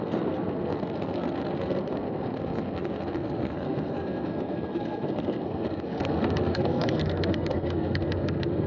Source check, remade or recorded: remade